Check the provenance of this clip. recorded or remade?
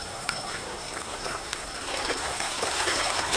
remade